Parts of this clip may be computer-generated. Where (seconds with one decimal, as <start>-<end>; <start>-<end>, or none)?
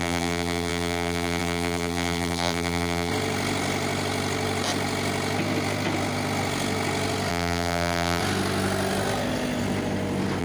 0.0-3.1; 7.3-8.2